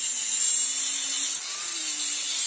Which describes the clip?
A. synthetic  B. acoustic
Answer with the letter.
B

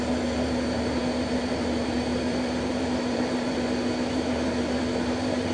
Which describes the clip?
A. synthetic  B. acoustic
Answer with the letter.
A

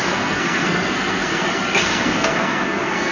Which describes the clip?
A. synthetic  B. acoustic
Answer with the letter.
A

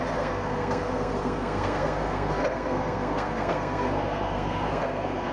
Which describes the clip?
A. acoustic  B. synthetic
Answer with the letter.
B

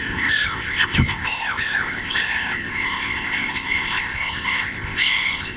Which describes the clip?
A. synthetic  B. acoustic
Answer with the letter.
A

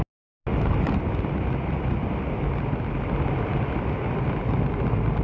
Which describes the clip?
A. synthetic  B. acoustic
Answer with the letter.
B